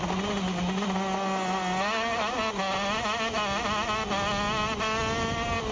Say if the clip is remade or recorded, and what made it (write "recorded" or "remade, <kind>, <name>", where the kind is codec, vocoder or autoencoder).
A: recorded